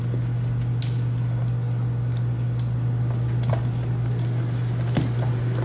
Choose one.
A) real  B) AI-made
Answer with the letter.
A